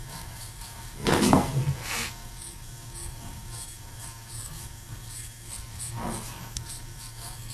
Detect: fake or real fake